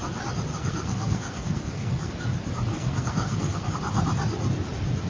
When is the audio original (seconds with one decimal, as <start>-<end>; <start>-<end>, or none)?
0.0-0.5; 2.1-2.7; 3.7-5.1